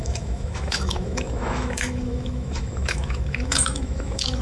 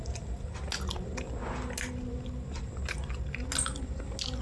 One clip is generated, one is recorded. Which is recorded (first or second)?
second